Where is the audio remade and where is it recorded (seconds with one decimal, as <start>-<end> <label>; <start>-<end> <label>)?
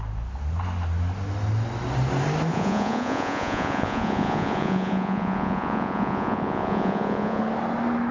0.0-2.5 recorded; 2.5-7.4 remade; 7.4-8.1 recorded